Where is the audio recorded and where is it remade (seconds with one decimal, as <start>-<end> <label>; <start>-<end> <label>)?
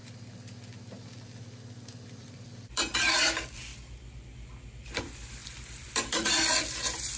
0.0-2.2 recorded; 2.2-3.7 remade; 3.7-5.0 recorded; 5.0-7.2 remade